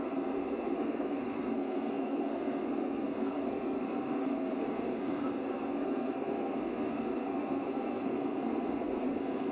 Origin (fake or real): fake